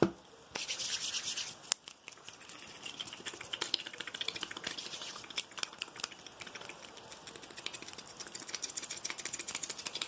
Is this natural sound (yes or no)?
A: yes